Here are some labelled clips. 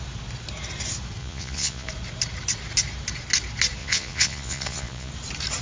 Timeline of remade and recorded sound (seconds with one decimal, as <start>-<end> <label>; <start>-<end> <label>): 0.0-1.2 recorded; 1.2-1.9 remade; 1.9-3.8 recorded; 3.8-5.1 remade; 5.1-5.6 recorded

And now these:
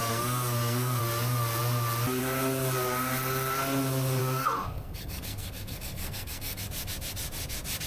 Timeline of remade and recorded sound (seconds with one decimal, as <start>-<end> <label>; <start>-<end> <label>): 0.0-1.0 remade; 1.0-4.2 recorded; 4.2-6.6 remade; 6.6-7.9 recorded

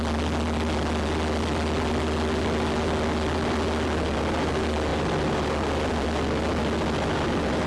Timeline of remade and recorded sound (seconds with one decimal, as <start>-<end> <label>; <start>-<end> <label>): 0.0-7.7 recorded

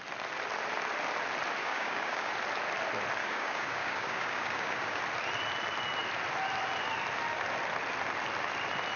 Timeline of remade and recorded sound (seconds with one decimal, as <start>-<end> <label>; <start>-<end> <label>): 0.0-1.6 recorded; 1.6-2.3 remade; 2.3-3.2 recorded; 3.2-5.0 remade; 5.0-9.0 recorded

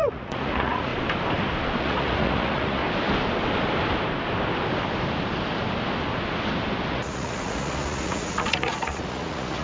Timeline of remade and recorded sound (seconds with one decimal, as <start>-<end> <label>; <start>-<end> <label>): 0.0-0.9 remade; 0.9-1.8 recorded; 1.8-2.8 remade; 2.8-6.9 recorded; 6.9-9.6 remade